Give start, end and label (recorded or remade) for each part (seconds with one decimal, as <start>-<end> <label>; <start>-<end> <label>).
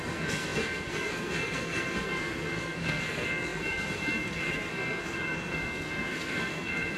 0.0-7.0 remade